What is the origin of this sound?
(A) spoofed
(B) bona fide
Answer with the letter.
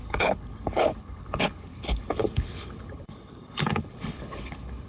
A